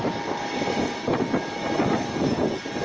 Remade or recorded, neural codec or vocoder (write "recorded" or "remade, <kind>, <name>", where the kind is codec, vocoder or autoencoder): recorded